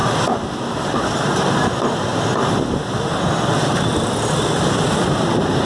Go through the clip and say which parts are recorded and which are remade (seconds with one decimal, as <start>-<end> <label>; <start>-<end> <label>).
0.0-0.7 recorded; 0.7-2.1 remade; 2.1-5.7 recorded